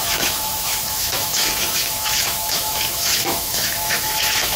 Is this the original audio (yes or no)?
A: no